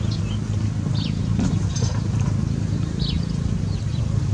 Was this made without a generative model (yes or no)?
yes